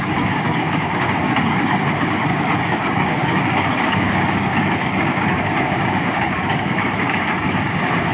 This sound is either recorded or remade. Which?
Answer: remade